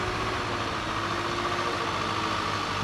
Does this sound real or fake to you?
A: real